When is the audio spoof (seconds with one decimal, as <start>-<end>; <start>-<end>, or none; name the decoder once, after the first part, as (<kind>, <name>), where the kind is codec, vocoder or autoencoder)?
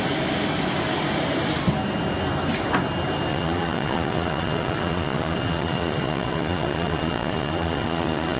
3.3-8.4 (vocoder, Vocos)